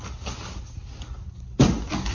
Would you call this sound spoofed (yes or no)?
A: no